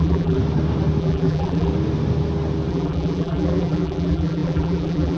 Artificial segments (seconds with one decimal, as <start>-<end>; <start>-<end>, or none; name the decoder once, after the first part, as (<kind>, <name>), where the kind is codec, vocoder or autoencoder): 0.0-0.4 (vocoder, BigVGAN v2); 1.0-1.7; 2.7-5.2